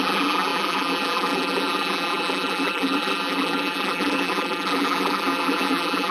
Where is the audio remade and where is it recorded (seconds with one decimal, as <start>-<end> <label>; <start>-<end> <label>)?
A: 0.0-6.1 remade